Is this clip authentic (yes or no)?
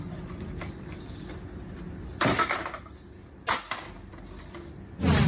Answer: yes